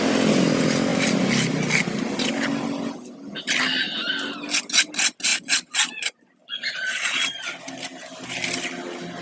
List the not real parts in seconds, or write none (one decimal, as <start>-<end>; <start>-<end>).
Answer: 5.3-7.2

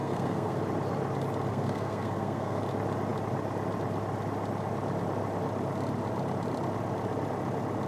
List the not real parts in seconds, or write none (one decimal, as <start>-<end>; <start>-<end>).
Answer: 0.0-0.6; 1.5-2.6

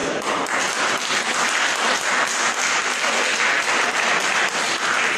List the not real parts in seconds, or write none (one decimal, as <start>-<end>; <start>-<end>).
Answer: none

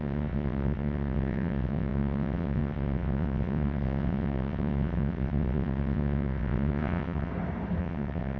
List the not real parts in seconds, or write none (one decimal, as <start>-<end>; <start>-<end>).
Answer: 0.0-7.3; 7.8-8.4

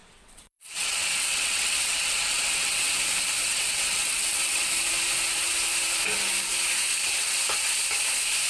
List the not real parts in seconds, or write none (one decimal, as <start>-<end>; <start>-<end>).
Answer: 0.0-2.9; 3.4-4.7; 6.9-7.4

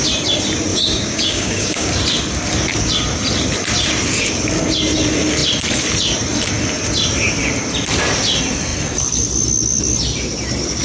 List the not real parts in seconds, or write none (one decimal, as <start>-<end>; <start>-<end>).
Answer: 0.7-1.9

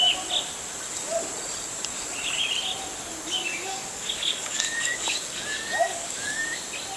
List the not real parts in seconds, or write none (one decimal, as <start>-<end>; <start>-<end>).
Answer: 3.5-6.4

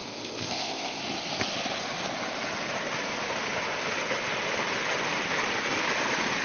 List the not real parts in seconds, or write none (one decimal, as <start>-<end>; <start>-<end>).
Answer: 0.0-1.0